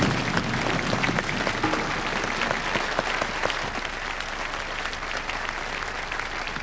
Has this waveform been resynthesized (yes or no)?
no